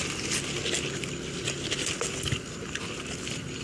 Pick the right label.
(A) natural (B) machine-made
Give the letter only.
A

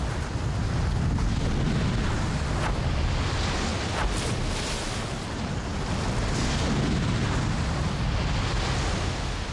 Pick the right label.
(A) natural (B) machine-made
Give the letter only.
A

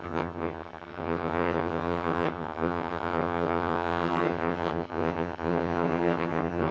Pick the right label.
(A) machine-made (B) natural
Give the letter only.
A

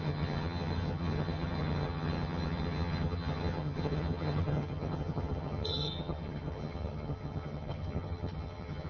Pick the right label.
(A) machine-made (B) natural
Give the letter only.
A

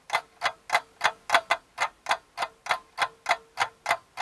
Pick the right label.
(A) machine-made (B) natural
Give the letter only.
B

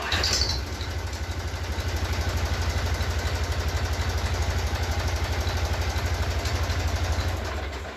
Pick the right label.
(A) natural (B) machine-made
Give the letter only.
A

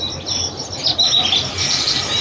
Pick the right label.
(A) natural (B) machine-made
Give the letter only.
A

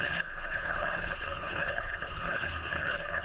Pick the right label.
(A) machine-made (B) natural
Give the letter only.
A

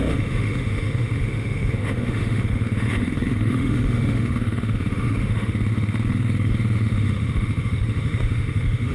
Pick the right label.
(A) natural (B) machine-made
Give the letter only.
B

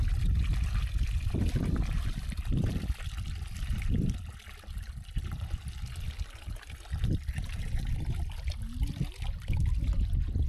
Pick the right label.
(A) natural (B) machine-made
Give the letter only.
A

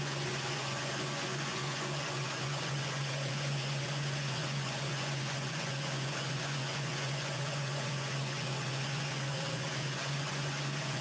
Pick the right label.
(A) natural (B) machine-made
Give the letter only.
B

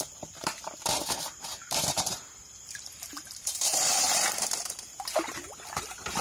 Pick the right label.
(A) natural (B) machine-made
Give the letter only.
B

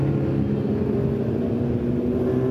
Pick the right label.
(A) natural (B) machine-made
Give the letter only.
A